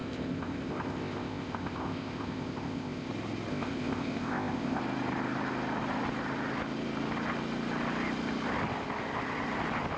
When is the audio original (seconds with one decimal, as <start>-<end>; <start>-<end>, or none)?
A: 3.1-3.5; 4.8-10.0